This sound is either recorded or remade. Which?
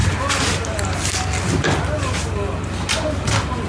recorded